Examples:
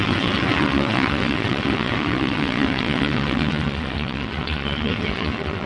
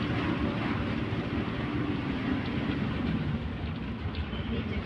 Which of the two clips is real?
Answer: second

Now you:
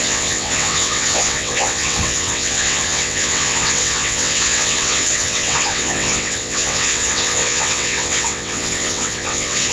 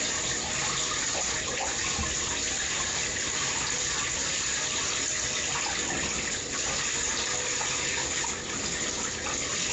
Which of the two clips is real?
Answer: second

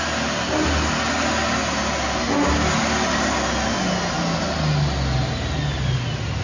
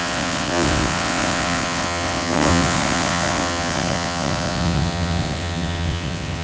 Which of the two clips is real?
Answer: first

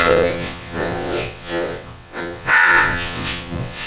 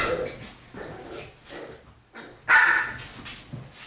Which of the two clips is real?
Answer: second